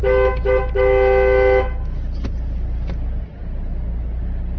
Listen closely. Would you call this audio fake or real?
real